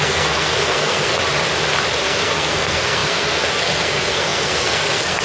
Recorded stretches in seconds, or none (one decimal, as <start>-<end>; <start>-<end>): 1.2-2.0